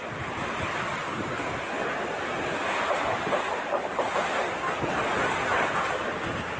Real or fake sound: real